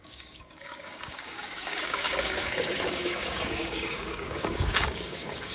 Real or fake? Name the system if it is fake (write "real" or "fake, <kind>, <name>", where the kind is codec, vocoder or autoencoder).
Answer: fake, codec, DAC